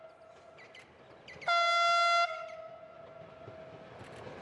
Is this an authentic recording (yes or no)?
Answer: yes